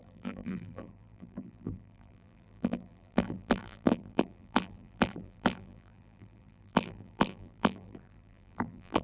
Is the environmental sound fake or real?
fake